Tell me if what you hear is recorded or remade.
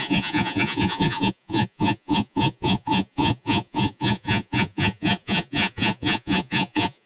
remade